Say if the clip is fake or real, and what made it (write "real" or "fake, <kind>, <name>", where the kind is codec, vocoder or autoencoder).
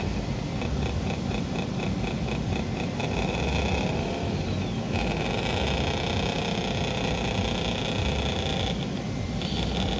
real